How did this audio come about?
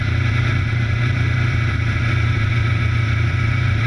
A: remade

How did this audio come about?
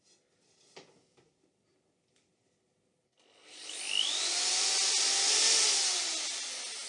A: recorded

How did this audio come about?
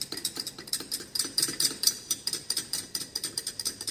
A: remade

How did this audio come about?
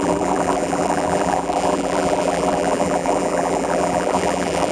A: remade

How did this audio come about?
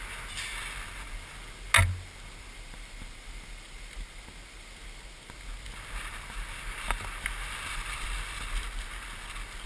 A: recorded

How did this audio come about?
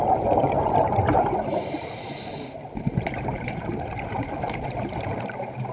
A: remade